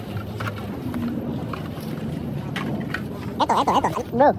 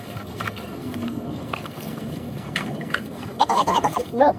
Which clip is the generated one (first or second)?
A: second